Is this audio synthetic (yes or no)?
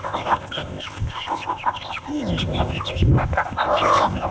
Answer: yes